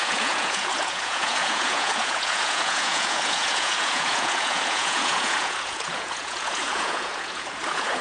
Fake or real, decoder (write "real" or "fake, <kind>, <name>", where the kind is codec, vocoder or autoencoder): fake, vocoder, Vocos